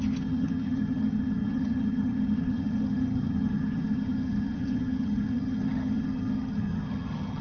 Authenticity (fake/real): fake